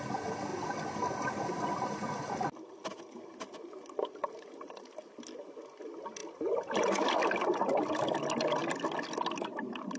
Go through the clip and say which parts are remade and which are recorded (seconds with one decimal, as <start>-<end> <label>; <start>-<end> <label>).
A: 0.0-10.0 recorded